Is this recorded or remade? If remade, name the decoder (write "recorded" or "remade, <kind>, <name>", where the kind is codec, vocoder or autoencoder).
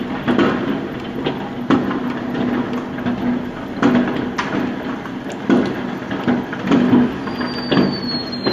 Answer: recorded